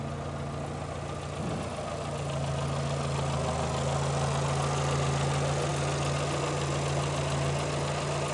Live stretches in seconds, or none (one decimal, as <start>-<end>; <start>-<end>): 0.0-8.3